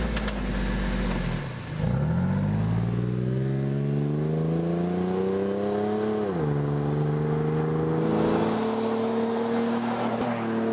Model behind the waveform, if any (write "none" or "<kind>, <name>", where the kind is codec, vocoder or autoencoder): none